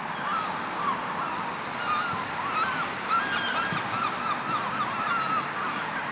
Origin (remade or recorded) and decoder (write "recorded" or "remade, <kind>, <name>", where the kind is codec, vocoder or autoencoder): recorded